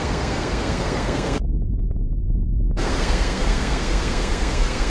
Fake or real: fake